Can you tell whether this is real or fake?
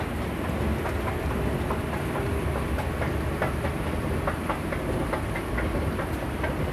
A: real